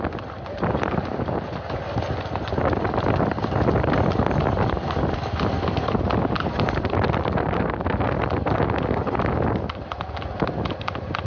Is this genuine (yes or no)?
yes